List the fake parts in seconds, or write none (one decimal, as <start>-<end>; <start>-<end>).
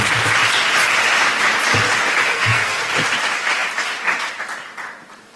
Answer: 2.2-2.9